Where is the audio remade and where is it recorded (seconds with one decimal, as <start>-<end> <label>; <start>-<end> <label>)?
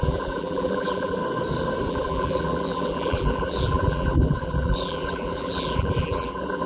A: 0.0-1.2 remade; 1.2-1.9 recorded; 1.9-6.7 remade